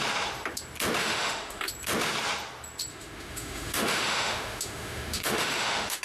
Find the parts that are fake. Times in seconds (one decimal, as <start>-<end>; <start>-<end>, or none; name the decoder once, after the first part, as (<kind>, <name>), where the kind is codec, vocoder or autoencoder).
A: 1.0-1.7 (autoencoder, DAC-VAE); 2.9-6.0